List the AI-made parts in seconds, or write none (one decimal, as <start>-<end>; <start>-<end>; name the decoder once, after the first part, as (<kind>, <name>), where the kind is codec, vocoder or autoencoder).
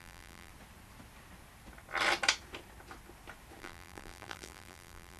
0.0-0.5 (vocoder, BigVGAN v2); 3.6-5.2